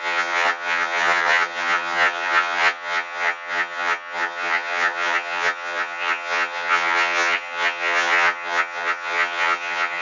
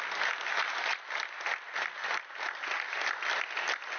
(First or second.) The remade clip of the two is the first